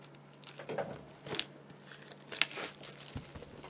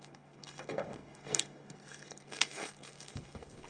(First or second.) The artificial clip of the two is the second